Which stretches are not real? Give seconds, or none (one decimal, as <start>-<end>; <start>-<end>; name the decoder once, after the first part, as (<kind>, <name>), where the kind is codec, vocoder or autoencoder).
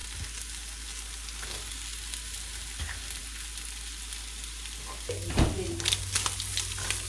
none